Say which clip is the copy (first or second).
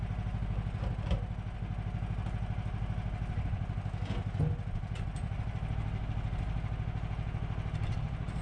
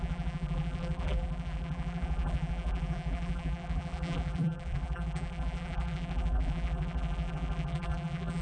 second